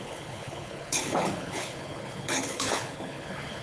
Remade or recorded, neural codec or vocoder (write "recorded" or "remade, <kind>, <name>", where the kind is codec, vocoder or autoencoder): remade, codec, HILCodec